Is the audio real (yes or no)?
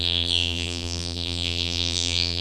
no